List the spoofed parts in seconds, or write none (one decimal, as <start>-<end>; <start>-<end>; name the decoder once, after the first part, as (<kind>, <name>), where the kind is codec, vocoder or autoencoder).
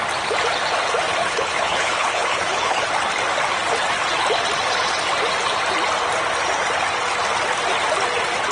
1.2-2.8 (codec, HILCodec)